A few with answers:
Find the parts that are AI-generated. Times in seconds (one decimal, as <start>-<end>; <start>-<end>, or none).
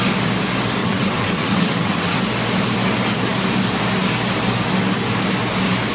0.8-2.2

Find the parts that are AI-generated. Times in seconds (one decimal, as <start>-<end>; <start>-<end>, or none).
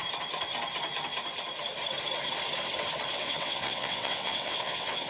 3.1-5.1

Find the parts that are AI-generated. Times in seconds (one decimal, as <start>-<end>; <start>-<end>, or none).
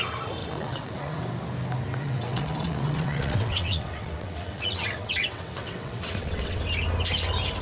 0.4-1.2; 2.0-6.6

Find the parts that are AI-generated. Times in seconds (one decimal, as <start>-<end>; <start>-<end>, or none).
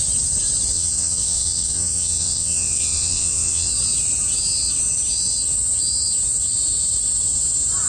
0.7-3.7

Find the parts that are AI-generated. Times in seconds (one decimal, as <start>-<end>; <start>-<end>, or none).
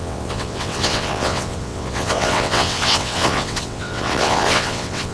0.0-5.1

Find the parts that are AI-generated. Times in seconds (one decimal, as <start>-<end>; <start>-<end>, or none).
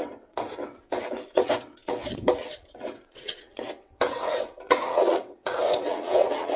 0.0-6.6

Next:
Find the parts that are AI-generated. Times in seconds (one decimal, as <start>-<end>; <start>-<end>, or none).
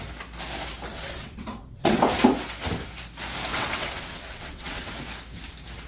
0.9-2.0; 3.5-4.9